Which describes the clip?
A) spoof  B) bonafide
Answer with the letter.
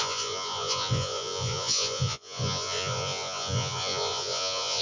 A